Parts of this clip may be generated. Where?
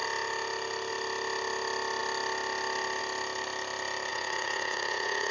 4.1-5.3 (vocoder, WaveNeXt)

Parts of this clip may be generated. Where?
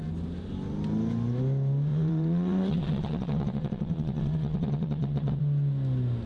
1.9-5.4 (vocoder, WaveNeXt)